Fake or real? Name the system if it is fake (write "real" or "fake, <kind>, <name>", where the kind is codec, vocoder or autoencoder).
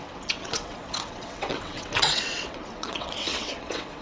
fake, vocoder, WaveNeXt